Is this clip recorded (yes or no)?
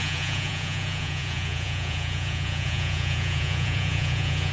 no